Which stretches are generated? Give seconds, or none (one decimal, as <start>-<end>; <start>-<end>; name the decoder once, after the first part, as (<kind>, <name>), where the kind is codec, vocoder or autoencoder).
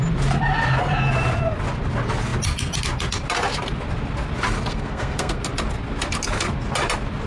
4.7-5.4 (codec, SNAC)